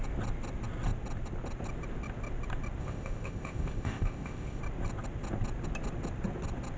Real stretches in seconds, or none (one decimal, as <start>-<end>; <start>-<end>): 0.0-2.8; 4.6-6.8